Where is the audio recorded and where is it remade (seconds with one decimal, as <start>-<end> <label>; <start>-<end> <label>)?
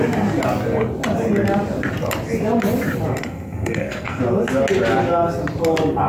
0.0-3.2 recorded; 3.2-4.2 remade; 4.2-6.1 recorded